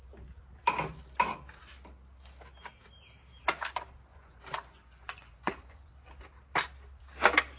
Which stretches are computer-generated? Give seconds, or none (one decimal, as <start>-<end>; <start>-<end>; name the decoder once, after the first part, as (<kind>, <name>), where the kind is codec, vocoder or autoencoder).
4.1-5.9 (vocoder, Vocos)